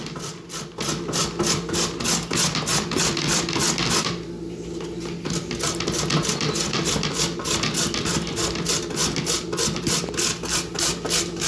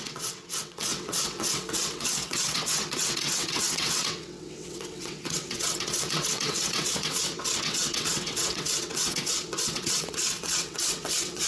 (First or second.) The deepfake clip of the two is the second